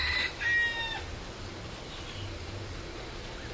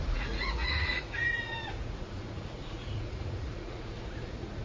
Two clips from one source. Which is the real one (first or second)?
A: first